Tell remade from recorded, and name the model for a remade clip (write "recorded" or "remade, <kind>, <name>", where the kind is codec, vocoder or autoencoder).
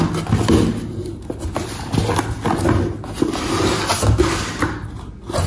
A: recorded